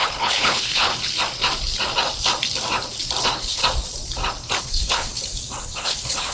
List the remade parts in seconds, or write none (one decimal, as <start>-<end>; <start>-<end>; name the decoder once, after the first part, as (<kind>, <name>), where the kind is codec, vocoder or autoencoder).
0.0-0.9 (codec, HILCodec); 3.2-3.6; 4.6-5.1; 5.6-6.3

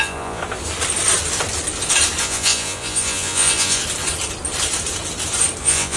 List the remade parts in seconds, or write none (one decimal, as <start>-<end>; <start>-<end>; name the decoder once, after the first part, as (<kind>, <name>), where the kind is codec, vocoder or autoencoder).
0.0-0.4 (vocoder, Vocos); 2.2-3.8; 5.6-6.0